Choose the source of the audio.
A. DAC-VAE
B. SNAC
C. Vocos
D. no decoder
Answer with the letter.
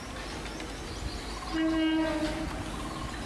D